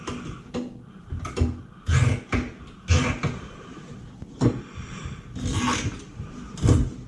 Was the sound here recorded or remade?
recorded